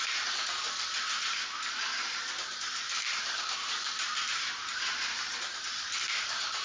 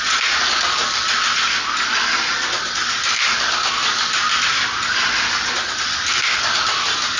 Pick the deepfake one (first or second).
first